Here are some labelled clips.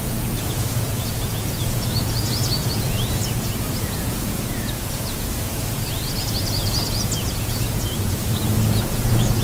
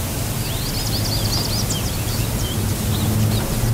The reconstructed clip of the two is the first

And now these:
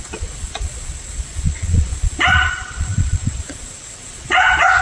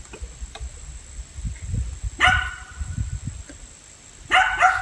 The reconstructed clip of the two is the first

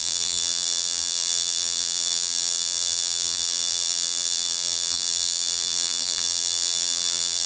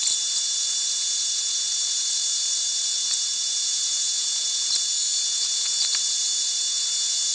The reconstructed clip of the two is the first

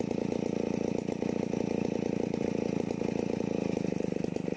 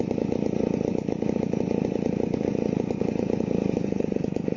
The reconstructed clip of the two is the second